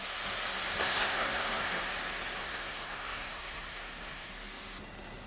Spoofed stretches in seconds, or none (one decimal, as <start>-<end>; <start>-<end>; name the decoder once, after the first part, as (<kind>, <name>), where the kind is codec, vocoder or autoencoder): 0.8-1.8 (codec, SNAC); 2.4-4.3